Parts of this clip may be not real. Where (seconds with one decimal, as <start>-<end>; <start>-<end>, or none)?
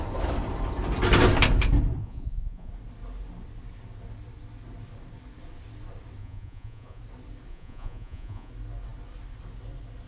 2.0-2.7; 6.2-7.0; 7.5-8.5